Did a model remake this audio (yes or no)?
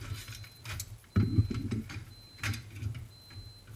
no